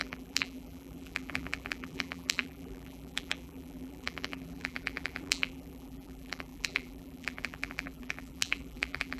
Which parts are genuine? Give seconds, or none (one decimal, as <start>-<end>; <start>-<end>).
none